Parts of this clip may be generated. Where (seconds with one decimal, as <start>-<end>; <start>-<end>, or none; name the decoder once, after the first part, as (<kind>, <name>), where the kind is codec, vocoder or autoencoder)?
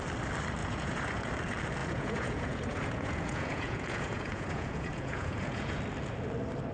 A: 0.6-1.3 (vocoder, Vocos); 1.8-5.8